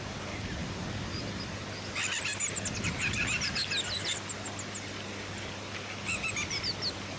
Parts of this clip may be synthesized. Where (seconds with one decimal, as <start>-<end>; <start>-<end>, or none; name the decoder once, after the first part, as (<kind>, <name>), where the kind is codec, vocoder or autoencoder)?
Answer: none